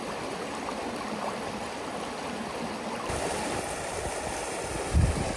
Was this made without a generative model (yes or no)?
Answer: yes